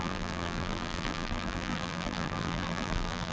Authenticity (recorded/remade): remade